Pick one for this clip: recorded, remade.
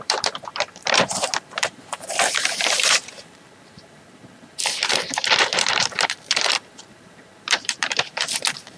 remade